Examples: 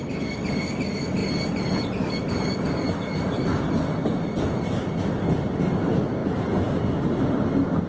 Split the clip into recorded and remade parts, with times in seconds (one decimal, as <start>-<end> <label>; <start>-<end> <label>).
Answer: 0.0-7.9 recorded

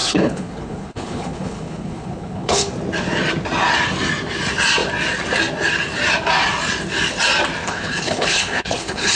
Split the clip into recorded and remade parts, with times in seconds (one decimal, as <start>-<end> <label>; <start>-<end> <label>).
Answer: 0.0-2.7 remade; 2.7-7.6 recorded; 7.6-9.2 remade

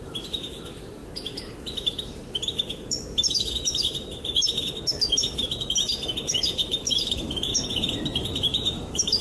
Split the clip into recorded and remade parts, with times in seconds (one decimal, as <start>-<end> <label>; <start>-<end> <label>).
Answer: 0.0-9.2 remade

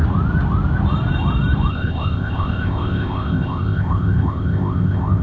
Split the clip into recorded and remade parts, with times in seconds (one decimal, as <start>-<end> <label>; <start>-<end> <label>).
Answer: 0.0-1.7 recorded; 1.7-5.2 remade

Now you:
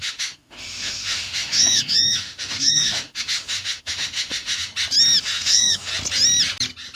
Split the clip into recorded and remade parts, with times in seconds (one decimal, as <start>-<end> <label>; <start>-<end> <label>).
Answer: 0.0-4.7 remade; 4.7-5.2 recorded; 5.2-5.9 remade; 5.9-7.0 recorded